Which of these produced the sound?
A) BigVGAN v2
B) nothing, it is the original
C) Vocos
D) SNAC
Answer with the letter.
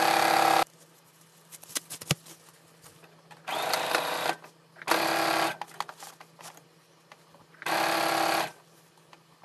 B